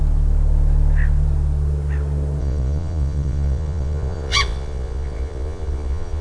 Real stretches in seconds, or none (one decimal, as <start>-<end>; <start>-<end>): 0.0-2.4